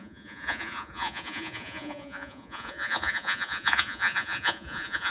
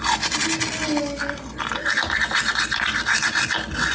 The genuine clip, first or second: second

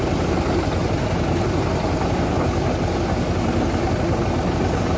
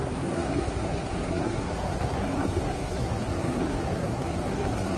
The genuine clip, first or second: first